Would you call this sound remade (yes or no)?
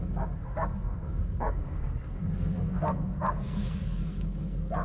yes